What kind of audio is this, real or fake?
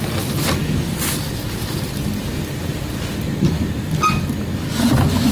real